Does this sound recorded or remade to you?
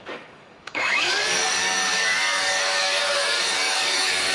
remade